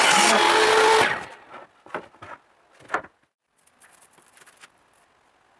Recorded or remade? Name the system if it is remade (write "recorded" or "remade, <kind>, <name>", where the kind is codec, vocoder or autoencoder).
recorded